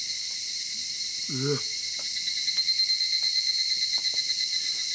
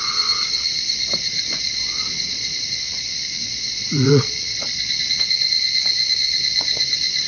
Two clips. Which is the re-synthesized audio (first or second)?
second